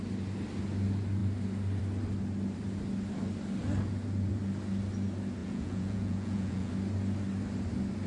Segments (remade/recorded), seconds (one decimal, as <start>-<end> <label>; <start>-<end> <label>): 0.0-5.4 recorded; 5.4-6.7 remade; 6.7-8.1 recorded